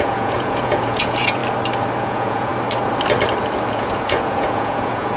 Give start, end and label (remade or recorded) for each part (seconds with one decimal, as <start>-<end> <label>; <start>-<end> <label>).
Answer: 0.0-1.4 remade; 1.4-2.0 recorded; 2.0-2.5 remade; 2.5-3.7 recorded; 3.7-5.2 remade